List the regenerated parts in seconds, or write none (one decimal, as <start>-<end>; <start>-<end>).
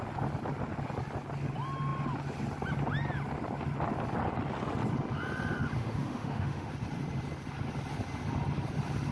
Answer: 5.8-6.7